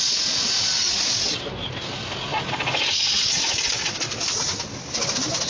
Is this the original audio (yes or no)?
yes